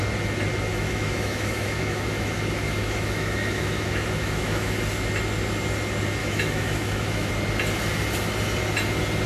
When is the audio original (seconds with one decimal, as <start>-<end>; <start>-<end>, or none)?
0.0-0.7; 4.8-6.2; 7.3-9.3